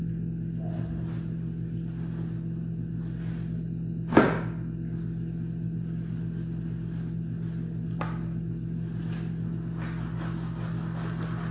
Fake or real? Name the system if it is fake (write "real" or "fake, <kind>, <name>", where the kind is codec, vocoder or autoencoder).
real